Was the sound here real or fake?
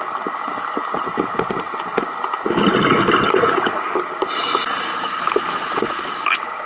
real